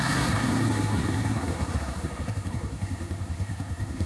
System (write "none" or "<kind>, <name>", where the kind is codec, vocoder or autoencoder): codec, SNAC